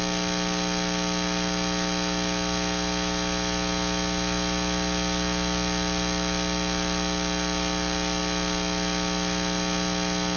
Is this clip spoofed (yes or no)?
no